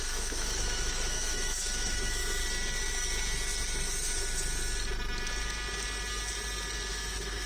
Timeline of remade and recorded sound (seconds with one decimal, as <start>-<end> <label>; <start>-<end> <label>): 0.0-2.4 remade; 2.4-6.9 recorded; 6.9-7.5 remade